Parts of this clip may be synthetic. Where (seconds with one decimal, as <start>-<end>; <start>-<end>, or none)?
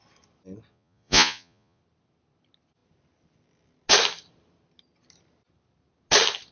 0.7-1.8